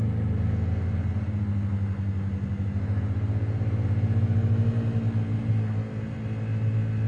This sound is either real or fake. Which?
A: real